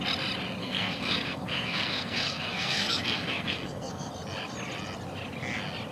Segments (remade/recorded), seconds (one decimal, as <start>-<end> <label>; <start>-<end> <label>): 0.0-0.6 recorded; 0.6-4.1 remade; 4.1-5.9 recorded